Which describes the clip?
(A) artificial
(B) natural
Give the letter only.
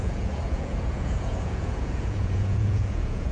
A